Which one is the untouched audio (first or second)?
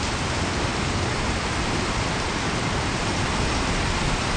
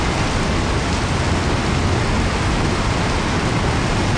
second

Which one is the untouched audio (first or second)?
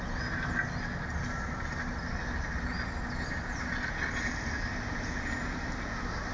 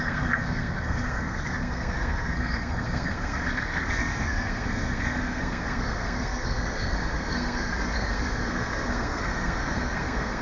first